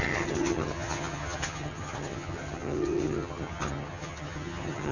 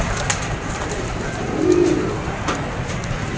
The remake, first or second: first